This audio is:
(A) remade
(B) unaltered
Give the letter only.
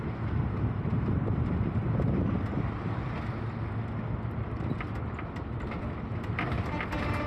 B